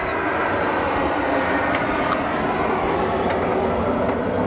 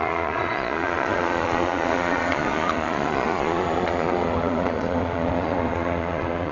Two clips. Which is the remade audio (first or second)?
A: second